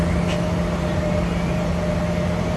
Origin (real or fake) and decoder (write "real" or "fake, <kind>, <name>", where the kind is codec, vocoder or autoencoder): real